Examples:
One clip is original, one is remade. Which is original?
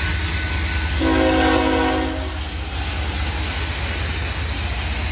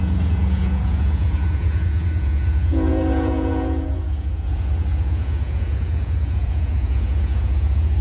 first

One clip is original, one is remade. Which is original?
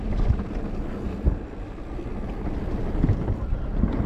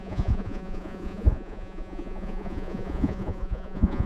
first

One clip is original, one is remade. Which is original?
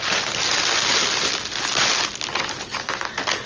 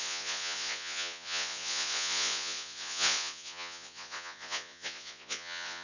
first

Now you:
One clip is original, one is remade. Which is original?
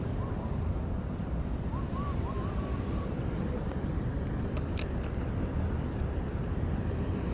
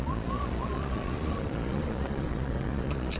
first